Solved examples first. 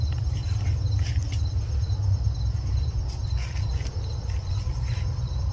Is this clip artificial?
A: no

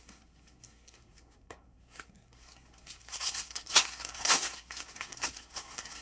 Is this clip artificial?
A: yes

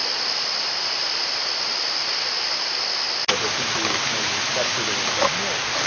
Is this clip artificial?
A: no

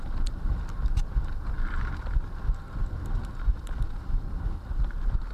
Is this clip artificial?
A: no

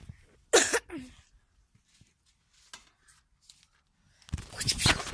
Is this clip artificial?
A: no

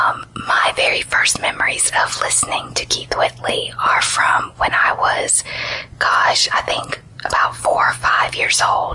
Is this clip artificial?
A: yes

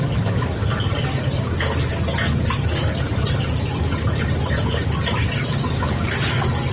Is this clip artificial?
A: no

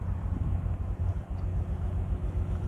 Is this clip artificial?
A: no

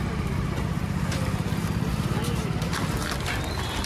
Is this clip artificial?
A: no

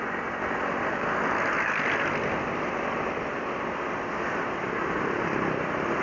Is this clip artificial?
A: yes